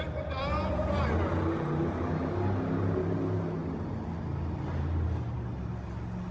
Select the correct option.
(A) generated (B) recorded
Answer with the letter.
B